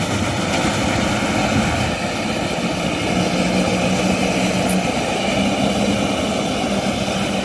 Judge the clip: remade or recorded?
recorded